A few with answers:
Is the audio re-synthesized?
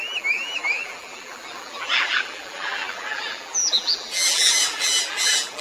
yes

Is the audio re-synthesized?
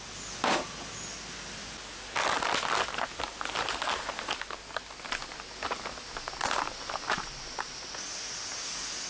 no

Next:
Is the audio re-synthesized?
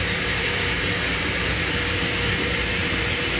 yes